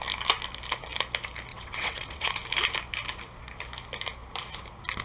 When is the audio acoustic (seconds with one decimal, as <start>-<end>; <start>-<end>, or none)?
0.0-1.5; 2.3-5.0